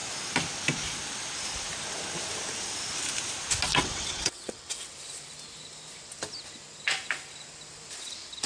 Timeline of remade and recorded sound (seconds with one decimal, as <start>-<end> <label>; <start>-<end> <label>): 0.0-3.7 recorded; 3.7-4.9 remade; 4.9-8.5 recorded